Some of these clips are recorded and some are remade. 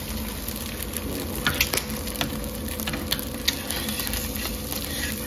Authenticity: recorded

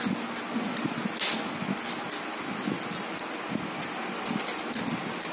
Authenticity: recorded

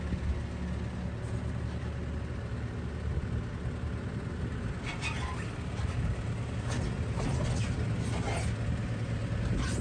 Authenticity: recorded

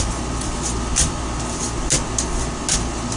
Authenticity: recorded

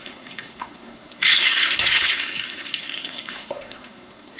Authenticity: remade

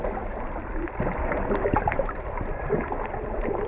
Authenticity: recorded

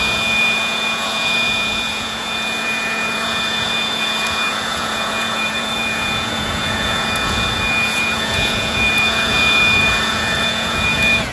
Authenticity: remade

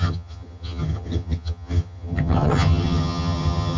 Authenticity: remade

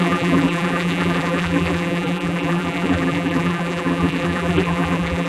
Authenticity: remade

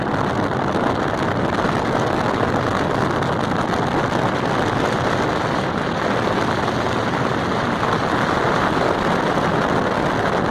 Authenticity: recorded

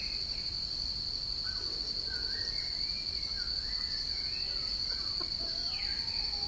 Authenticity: recorded